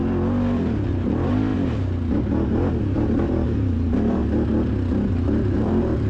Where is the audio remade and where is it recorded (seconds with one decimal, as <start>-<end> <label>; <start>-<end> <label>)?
0.0-0.9 recorded; 0.9-1.5 remade; 1.5-2.8 recorded; 2.8-4.2 remade; 4.2-5.1 recorded; 5.1-6.1 remade